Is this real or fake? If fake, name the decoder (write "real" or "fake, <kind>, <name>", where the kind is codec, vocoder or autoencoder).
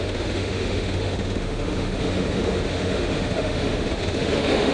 fake, autoencoder, DAC-VAE